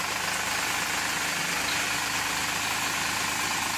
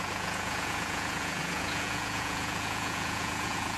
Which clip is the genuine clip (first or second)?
first